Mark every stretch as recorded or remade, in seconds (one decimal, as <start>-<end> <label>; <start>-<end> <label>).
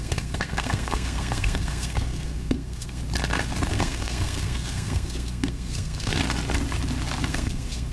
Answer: 0.0-3.0 remade; 3.0-3.7 recorded; 3.7-6.2 remade; 6.2-7.3 recorded; 7.3-7.9 remade